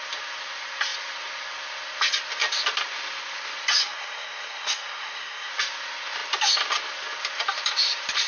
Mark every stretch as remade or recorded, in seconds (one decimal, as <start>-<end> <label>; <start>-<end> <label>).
0.0-3.8 recorded; 3.8-5.5 remade; 5.5-8.3 recorded